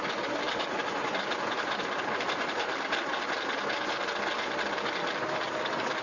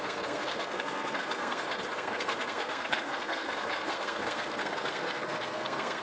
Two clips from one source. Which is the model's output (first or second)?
second